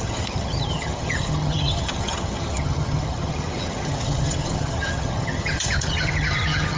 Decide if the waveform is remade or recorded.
remade